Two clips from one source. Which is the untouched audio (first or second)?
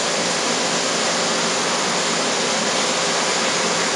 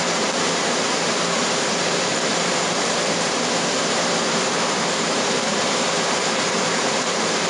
first